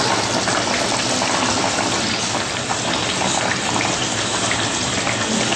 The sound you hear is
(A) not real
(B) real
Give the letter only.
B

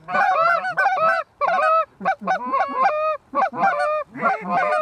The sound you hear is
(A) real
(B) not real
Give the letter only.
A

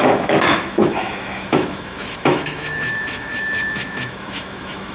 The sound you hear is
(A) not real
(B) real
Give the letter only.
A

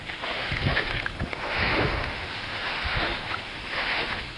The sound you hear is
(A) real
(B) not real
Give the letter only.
B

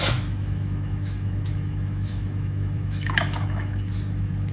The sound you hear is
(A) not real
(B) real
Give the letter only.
A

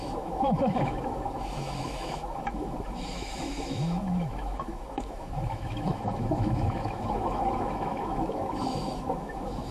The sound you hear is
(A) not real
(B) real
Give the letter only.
A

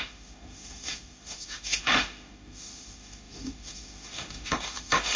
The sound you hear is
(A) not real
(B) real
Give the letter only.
A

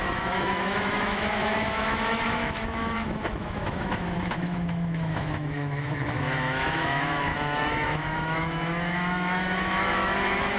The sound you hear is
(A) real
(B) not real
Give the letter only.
B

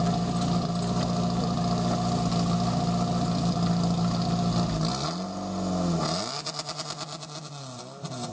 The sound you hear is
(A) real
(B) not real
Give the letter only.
A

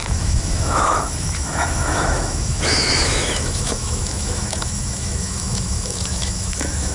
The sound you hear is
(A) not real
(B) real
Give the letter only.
A